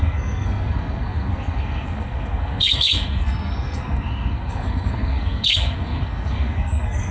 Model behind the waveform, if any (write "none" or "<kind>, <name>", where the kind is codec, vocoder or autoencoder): codec, SNAC